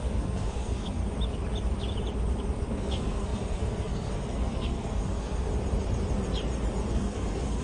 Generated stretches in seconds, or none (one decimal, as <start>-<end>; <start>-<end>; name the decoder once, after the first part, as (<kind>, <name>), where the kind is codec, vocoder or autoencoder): 0.0-1.0 (codec, SNAC); 2.7-5.5; 6.9-7.6